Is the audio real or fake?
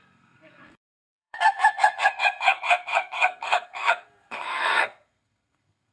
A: fake